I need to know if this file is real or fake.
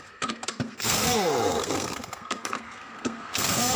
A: fake